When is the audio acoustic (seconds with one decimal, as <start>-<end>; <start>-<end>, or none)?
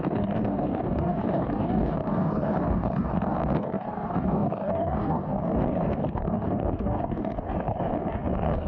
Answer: none